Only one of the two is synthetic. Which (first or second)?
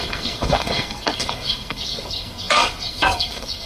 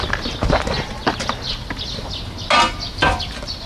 first